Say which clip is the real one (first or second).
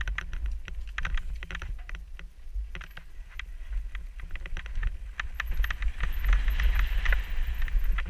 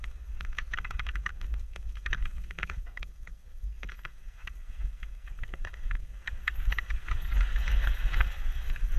first